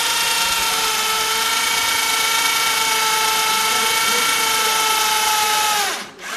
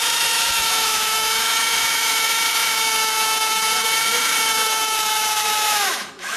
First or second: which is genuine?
first